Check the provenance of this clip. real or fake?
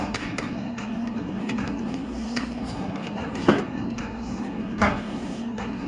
fake